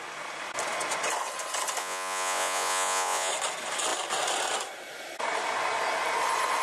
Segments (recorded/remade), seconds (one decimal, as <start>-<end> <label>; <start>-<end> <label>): 0.0-1.8 recorded; 1.8-3.3 remade; 3.3-6.6 recorded